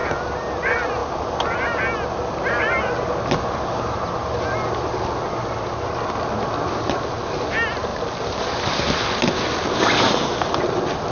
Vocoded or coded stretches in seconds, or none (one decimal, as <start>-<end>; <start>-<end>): none